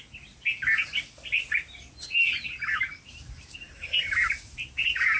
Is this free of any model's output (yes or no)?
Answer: yes